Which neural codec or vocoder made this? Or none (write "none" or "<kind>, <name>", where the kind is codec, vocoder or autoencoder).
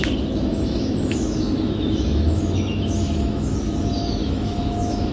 autoencoder, DAC-VAE